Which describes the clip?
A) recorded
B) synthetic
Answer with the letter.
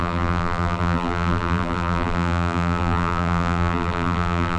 B